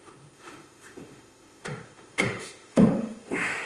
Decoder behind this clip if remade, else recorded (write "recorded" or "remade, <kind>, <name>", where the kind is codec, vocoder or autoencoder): remade, autoencoder, DAC-VAE